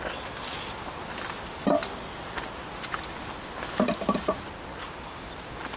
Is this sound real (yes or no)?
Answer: yes